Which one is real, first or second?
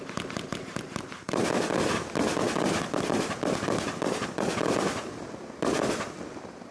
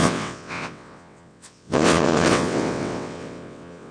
first